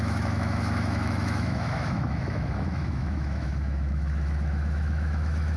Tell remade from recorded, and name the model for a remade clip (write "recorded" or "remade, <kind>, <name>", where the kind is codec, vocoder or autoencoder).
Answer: remade, autoencoder, DAC-VAE